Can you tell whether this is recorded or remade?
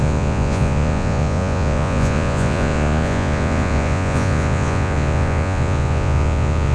remade